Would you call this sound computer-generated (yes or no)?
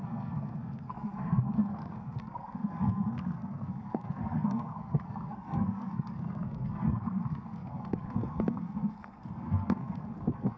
yes